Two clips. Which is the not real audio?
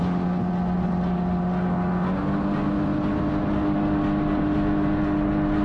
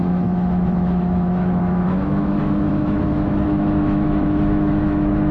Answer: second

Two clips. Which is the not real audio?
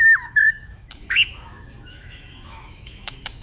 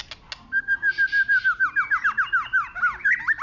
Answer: first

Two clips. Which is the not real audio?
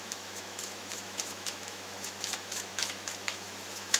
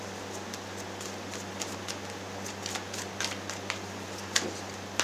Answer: first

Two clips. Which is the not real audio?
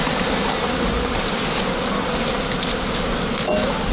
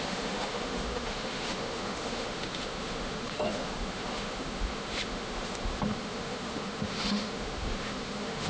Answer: second